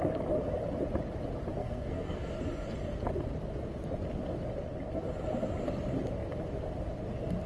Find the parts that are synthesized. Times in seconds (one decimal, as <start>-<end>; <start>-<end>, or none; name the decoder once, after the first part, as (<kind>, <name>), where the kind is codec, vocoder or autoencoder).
1.6-2.3 (codec, SNAC)